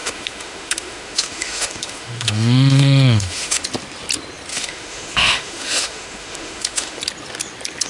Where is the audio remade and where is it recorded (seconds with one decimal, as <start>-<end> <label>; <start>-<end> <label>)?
0.0-3.6 remade; 3.6-4.5 recorded; 4.5-7.0 remade; 7.0-7.9 recorded